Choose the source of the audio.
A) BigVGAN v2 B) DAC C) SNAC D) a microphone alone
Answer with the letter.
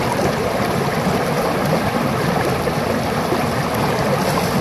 D